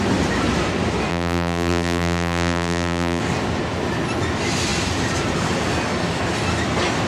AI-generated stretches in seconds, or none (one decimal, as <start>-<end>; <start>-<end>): 1.1-3.2